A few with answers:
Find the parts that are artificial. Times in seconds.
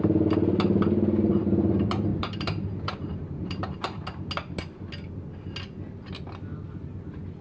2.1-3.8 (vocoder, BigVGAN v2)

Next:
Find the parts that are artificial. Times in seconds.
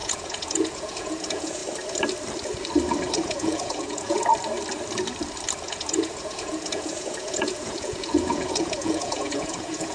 0.0-1.6 (vocoder, Vocos); 3.1-4.3; 5.6-9.9